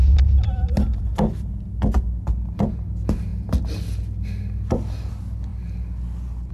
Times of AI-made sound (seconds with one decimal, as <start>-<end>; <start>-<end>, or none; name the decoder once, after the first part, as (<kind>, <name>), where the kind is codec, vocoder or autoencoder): none